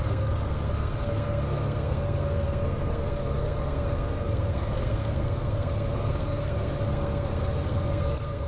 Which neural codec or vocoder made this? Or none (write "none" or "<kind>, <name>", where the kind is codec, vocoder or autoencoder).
codec, SNAC